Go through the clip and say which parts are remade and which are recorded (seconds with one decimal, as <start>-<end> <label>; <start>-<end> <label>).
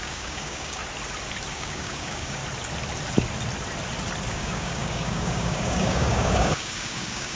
0.0-0.8 remade; 0.8-1.5 recorded; 1.5-2.4 remade; 2.4-4.3 recorded; 4.3-7.4 remade